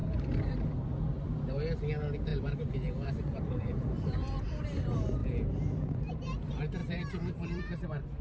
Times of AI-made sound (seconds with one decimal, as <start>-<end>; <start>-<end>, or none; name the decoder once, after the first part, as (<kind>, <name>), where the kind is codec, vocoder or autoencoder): 0.0-0.7 (vocoder, BigVGAN v2); 2.3-4.6; 6.8-7.6